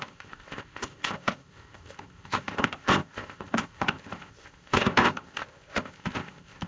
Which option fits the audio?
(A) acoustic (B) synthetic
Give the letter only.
B